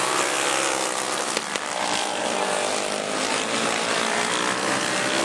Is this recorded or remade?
recorded